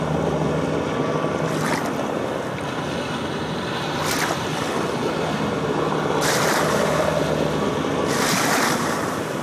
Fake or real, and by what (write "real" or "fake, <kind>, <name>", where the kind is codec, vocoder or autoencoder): real